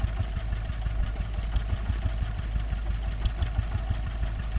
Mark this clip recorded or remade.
recorded